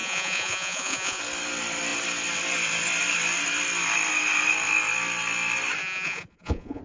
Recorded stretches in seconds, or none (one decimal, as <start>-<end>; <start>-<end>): 1.2-5.8